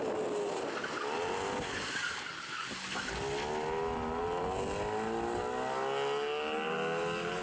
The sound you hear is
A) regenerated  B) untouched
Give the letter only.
B